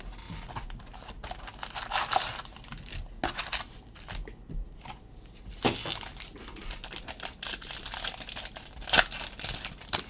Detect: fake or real real